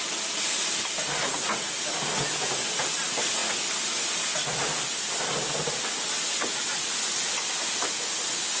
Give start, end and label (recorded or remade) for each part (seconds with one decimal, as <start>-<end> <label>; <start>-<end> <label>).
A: 0.0-8.6 recorded